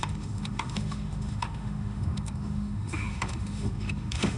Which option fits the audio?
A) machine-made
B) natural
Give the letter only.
A